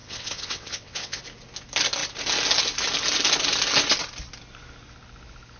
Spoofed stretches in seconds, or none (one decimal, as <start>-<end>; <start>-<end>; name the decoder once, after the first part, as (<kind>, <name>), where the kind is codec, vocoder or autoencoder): 0.0-1.2 (vocoder, WaveNeXt)